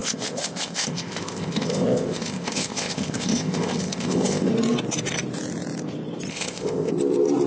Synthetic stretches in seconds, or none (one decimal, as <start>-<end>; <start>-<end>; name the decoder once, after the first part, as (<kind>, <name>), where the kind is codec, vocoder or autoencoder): 0.0-4.5 (codec, ZipCodec); 6.3-6.9